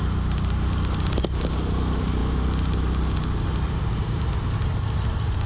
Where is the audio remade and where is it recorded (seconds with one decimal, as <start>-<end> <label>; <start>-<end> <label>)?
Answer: 0.0-5.5 recorded